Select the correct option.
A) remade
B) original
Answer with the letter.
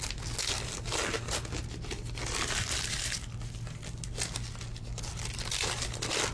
B